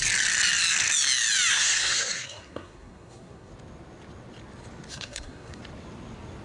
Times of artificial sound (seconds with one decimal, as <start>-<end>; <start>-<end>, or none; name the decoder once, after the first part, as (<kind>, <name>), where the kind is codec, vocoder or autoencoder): 1.5-3.5 (codec, SNAC); 4.9-5.6